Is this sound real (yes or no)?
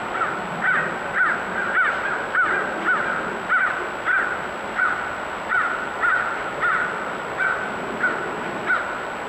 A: yes